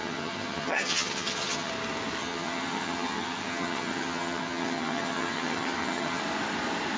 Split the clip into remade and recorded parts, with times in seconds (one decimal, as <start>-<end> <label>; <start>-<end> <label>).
0.0-1.7 remade; 1.7-2.2 recorded; 2.2-6.2 remade; 6.2-7.0 recorded